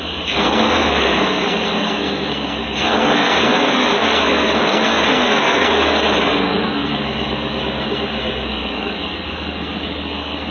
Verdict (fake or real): fake